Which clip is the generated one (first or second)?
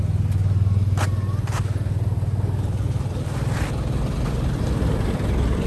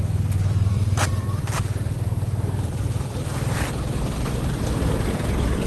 second